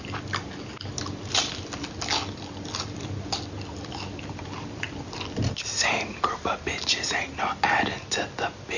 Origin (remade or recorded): recorded